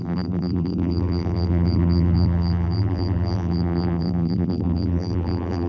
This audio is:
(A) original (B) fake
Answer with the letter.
B